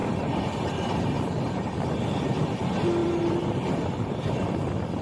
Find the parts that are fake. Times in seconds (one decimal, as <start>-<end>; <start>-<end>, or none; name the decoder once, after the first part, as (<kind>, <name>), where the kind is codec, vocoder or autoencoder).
0.0-1.9 (vocoder, BigVGAN v2); 3.0-4.3